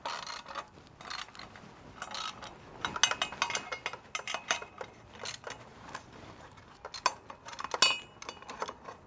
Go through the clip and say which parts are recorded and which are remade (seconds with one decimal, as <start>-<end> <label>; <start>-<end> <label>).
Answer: 0.0-5.7 recorded; 5.7-6.7 remade; 6.7-9.1 recorded